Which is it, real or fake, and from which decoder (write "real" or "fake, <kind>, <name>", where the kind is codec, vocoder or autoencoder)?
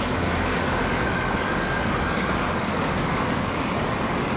fake, codec, DAC